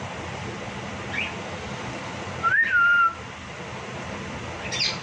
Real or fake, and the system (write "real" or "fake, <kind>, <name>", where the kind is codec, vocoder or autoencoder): real